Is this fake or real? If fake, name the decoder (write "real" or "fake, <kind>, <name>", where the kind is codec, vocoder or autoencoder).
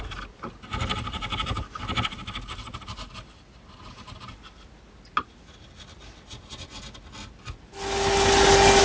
real